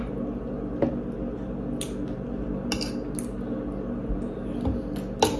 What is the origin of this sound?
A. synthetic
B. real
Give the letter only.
B